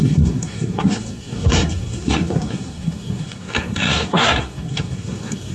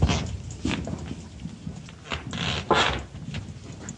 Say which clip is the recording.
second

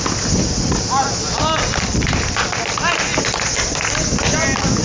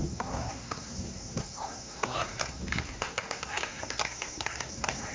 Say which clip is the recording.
first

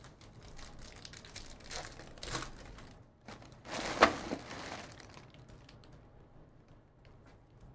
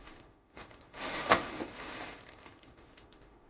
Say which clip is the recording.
first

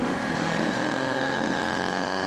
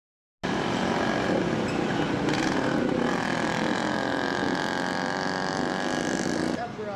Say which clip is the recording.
second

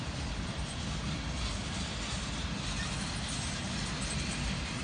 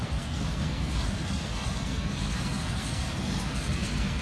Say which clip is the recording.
first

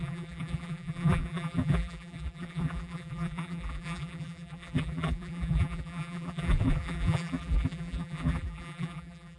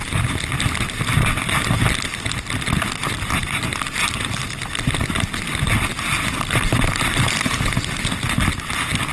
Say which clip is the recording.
second